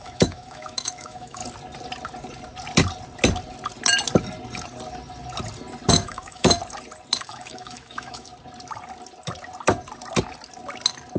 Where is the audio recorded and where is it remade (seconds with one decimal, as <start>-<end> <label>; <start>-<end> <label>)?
0.0-1.4 remade; 1.4-5.9 recorded; 5.9-6.6 remade; 6.6-7.2 recorded; 7.2-8.3 remade; 8.3-11.2 recorded